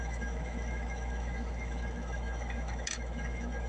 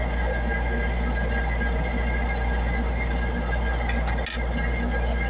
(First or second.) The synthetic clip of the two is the first